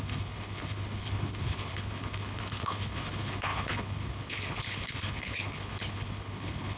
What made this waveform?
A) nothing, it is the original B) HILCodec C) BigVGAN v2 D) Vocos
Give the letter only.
B